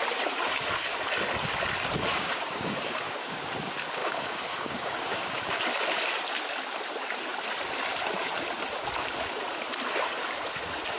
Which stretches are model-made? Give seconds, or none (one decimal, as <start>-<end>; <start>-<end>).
2.1-3.4; 4.0-5.6